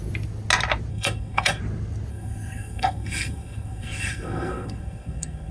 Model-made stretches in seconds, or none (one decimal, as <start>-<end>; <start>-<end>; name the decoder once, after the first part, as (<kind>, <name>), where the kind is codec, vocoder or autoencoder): 0.9-1.6 (codec, SNAC); 2.1-5.5